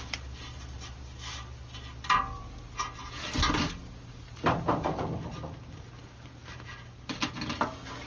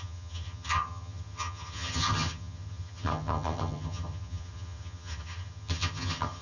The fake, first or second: second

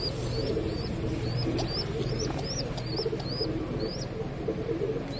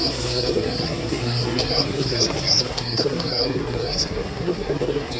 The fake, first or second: second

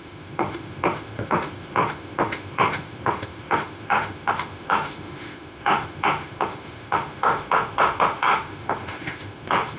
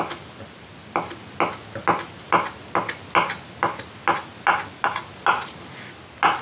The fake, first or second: first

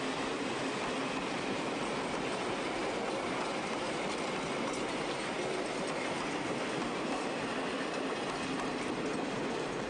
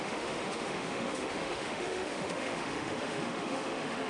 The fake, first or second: second